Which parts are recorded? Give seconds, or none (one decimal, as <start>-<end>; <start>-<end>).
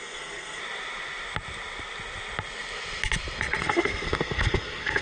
0.6-3.6